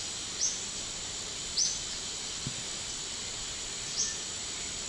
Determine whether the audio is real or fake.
real